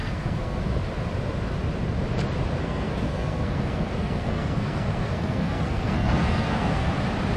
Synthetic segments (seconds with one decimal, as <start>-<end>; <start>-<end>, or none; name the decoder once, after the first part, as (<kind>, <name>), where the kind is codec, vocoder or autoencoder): 0.0-0.6 (codec, SNAC); 2.6-6.9